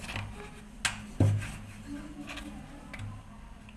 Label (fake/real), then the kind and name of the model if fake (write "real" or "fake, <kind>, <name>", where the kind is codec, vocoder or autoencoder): real